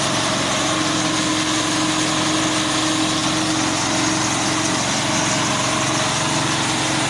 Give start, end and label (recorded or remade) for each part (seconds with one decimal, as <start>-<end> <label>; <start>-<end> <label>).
0.0-7.1 recorded